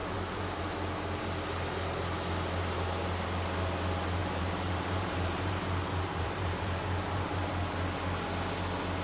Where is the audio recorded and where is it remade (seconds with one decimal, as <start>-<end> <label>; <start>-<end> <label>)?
0.0-0.6 remade; 0.6-4.2 recorded; 4.2-7.5 remade; 7.5-9.0 recorded